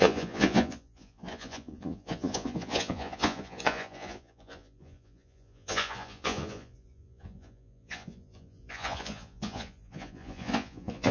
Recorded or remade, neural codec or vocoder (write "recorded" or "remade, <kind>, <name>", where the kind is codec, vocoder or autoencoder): remade, vocoder, Vocos